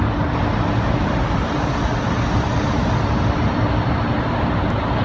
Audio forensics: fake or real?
real